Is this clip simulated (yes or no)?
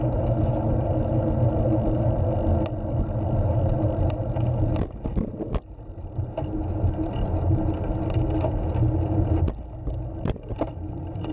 no